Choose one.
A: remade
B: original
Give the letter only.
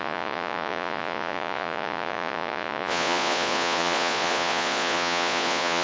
A